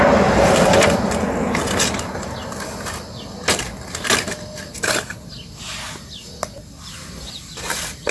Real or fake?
real